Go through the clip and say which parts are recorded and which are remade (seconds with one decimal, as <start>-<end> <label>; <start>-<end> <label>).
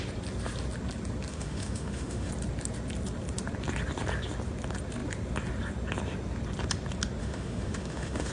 0.0-1.3 recorded; 1.3-2.3 remade; 2.3-7.2 recorded; 7.2-8.3 remade